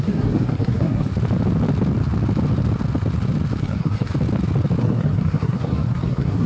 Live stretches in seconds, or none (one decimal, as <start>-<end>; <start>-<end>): 1.1-3.6; 4.1-4.8